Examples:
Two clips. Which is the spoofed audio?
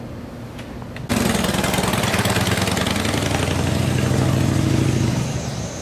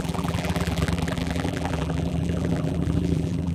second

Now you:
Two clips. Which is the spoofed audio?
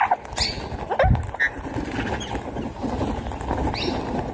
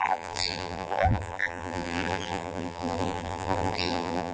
second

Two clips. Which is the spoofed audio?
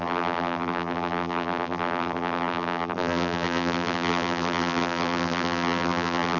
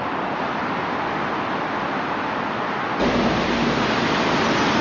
first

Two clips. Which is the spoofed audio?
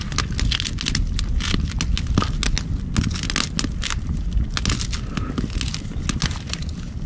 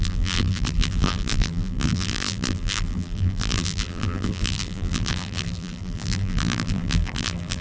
second